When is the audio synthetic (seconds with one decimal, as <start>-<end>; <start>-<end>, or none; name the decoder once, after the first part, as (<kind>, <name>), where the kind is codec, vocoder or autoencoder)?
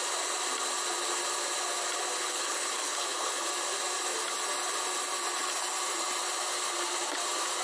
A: 2.2-3.5 (codec, HILCodec)